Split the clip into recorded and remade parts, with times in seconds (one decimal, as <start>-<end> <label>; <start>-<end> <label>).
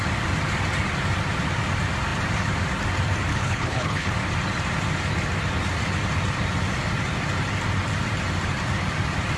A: 0.0-3.3 recorded; 3.3-4.1 remade; 4.1-9.4 recorded